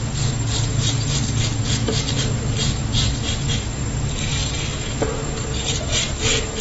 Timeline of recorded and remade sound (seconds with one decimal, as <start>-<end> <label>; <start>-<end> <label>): 0.0-6.6 recorded